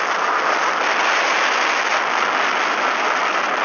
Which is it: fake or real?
real